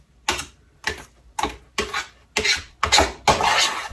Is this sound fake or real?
real